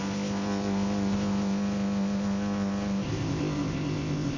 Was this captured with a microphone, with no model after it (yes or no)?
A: no